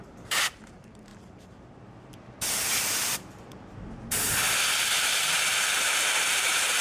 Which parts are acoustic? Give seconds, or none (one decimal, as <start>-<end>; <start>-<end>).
1.1-4.8